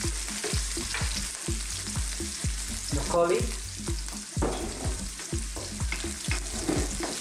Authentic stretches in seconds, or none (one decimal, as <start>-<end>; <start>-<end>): 0.0-0.4; 1.3-4.3; 5.9-7.2